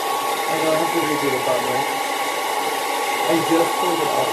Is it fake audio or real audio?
fake